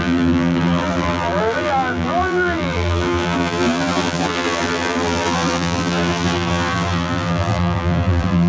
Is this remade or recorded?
remade